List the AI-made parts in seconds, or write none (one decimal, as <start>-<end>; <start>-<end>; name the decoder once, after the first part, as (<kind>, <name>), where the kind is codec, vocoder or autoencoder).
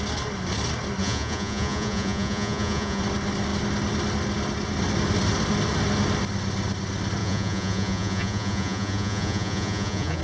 1.0-3.0 (vocoder, Vocos); 7.2-10.2